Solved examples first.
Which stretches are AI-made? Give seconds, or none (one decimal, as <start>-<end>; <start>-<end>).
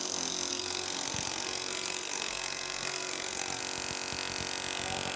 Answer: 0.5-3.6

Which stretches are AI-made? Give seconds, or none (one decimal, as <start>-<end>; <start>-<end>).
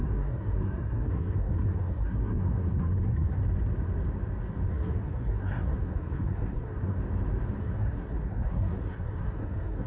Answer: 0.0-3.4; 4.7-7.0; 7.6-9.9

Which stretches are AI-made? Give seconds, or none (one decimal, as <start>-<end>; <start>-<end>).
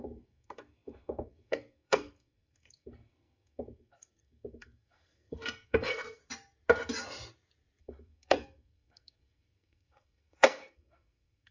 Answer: 0.0-6.2; 7.8-11.5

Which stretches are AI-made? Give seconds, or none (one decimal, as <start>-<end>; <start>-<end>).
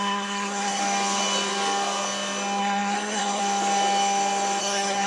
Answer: 0.0-0.8; 2.6-3.4; 4.6-5.1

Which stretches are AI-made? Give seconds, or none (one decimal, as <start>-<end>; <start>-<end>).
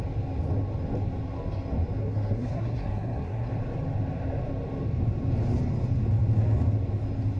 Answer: 2.0-3.5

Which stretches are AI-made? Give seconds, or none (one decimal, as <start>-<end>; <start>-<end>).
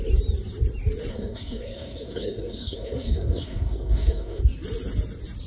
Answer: 1.1-4.4